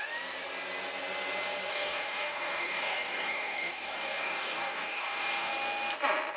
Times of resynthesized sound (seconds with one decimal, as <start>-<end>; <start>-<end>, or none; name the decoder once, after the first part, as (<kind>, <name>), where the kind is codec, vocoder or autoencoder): 1.7-5.5 (codec, DAC)